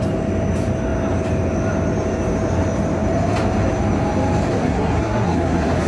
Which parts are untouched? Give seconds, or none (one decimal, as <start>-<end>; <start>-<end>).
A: 0.0-4.5